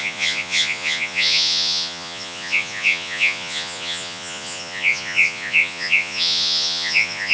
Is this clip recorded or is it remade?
remade